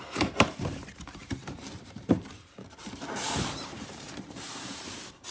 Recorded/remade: remade